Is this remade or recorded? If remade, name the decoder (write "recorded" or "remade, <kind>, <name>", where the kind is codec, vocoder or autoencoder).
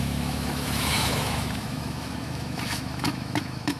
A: remade, autoencoder, DAC-VAE